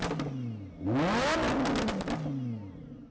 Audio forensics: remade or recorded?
recorded